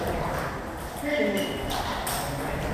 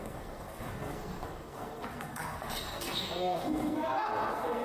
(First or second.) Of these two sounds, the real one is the first